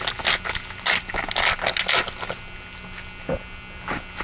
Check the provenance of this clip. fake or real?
real